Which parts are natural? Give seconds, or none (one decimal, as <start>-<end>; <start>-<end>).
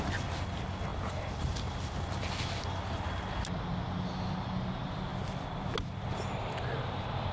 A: 0.0-7.3